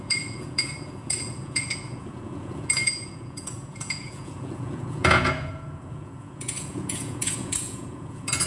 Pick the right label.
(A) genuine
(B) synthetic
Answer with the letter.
B